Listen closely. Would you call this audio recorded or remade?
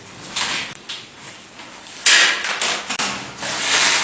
recorded